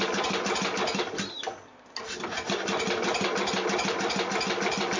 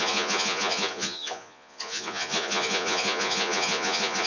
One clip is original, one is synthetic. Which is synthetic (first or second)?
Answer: second